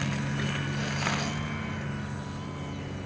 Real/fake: real